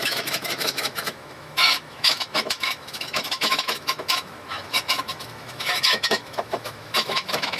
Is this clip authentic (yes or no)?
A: no